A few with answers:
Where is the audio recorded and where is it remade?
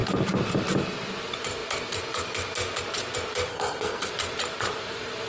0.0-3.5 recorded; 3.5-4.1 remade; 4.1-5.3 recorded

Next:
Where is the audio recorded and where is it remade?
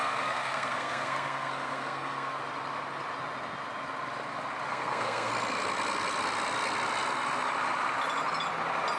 0.0-2.4 remade; 2.4-4.7 recorded; 4.7-5.3 remade; 5.3-9.0 recorded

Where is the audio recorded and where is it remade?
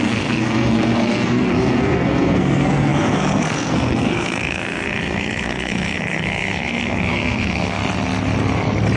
0.0-7.8 remade; 7.8-9.0 recorded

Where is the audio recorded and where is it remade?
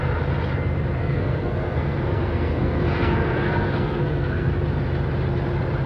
0.0-1.0 recorded; 1.0-4.5 remade; 4.5-5.9 recorded